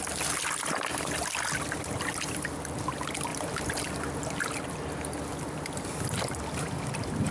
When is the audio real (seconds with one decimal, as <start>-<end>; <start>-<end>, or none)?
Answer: 0.0-7.3